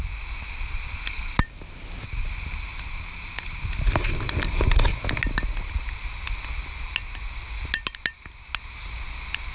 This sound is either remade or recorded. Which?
recorded